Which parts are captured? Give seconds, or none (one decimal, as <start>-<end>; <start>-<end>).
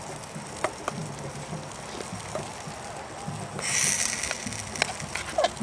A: 0.0-5.6